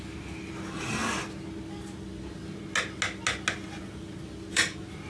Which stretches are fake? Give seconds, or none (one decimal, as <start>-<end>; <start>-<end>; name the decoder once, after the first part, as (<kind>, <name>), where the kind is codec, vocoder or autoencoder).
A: none